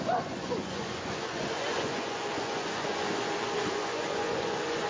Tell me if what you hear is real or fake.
fake